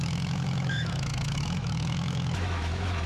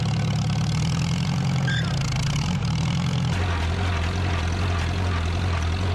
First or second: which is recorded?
second